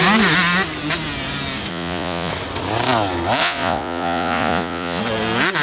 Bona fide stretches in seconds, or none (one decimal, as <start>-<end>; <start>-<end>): 0.0-1.7; 2.3-3.4; 5.0-5.6